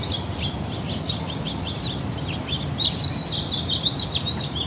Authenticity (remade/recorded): recorded